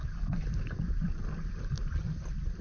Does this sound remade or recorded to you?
recorded